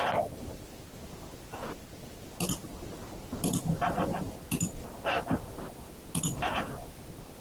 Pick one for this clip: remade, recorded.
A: recorded